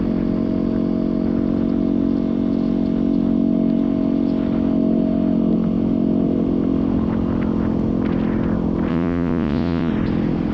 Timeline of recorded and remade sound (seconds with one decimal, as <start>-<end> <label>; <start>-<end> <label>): 0.0-8.9 recorded; 8.9-9.9 remade; 9.9-10.5 recorded